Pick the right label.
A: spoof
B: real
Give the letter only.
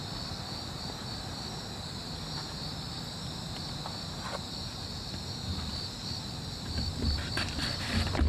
B